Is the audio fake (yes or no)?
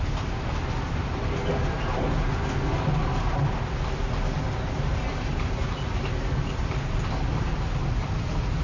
no